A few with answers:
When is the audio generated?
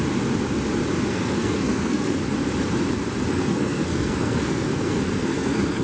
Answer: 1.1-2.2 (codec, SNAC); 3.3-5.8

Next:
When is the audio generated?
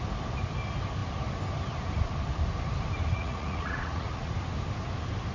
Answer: 3.1-4.3 (vocoder, Vocos)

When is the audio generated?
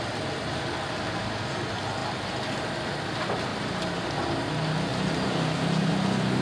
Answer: 3.5-4.0 (vocoder, BigVGAN v2); 4.9-5.9